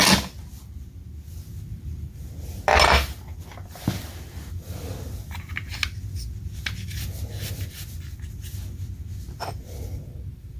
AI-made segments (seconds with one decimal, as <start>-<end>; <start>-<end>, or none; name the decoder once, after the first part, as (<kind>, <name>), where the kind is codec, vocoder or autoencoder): none